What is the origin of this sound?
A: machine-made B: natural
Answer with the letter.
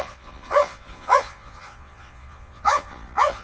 A